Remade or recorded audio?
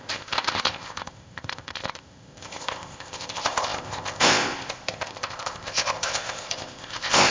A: remade